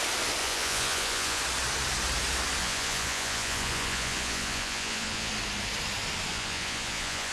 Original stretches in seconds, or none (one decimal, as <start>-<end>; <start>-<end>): 0.0-0.4; 1.4-2.6; 5.3-6.3